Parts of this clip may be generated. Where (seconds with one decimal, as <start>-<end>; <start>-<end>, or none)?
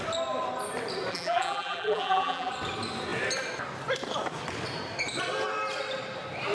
1.1-2.5